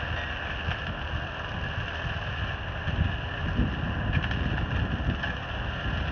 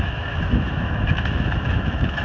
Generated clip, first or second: second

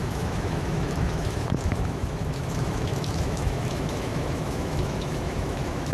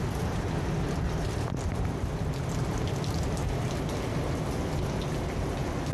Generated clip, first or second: first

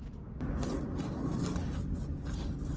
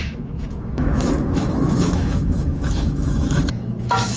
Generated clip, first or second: second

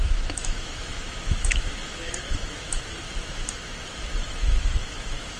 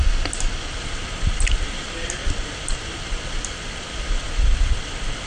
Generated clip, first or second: first